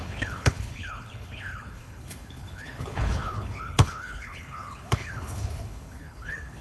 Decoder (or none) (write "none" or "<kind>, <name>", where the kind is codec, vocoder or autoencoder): codec, HILCodec